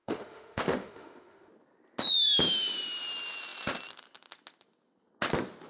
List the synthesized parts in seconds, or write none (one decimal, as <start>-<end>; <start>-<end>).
0.0-1.5